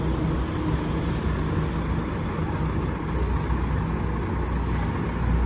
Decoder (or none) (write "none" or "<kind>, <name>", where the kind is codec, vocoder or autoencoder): none